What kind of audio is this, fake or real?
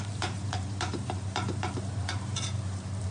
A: fake